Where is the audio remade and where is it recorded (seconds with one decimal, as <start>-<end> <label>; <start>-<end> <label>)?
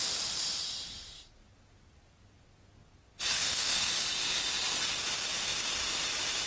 0.0-3.3 recorded; 3.3-3.9 remade; 3.9-6.5 recorded